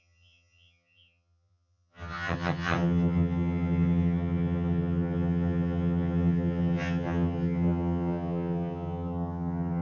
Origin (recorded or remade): remade